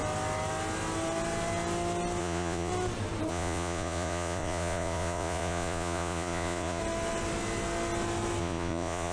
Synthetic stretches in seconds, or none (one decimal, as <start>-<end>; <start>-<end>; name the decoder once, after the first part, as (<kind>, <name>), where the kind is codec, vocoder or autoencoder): 2.2-2.7 (vocoder, Vocos); 3.3-6.8; 8.4-9.1